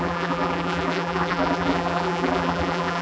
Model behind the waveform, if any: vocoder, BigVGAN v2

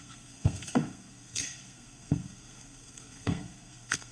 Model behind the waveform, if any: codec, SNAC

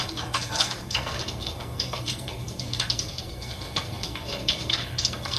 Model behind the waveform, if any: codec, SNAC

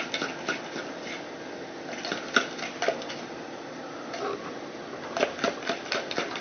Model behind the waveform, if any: none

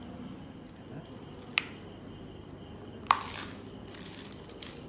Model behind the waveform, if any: none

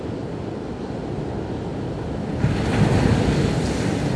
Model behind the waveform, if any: none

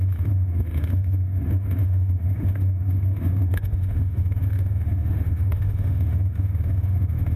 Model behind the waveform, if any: autoencoder, DAC-VAE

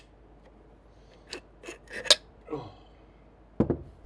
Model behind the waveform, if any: none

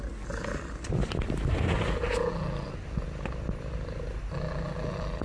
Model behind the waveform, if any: none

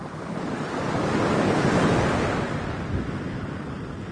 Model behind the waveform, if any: none